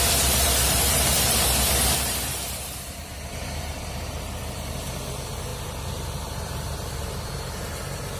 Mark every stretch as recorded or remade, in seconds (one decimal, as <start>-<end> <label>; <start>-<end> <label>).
0.0-8.2 remade